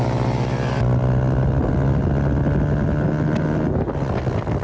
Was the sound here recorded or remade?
recorded